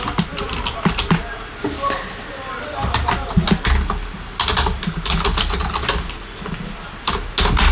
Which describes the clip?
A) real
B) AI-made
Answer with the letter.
A